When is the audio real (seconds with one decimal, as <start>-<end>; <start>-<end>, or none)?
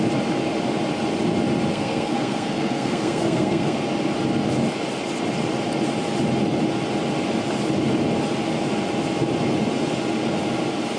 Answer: 0.0-1.7; 3.8-11.0